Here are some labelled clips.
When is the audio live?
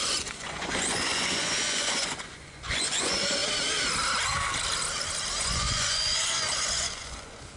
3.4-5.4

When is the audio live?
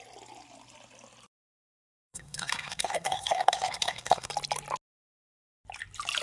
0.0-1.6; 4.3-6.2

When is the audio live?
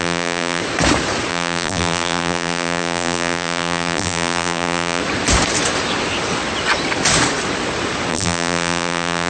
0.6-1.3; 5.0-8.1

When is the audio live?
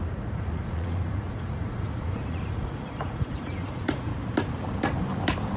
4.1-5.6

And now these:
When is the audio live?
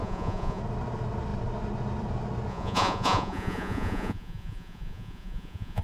0.6-2.5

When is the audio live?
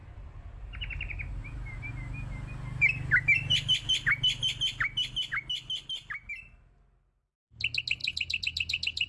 1.9-8.0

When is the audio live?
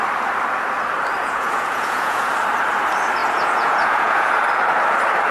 0.0-1.2; 2.3-3.2; 4.3-5.3